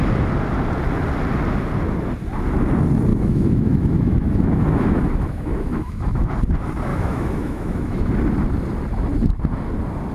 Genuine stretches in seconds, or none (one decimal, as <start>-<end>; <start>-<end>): 0.0-3.1; 6.3-6.9; 8.1-10.1